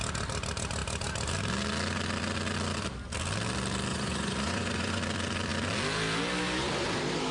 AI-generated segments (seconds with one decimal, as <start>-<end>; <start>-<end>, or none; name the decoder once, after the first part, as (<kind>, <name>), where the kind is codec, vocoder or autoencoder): 3.9-5.0 (vocoder, Vocos)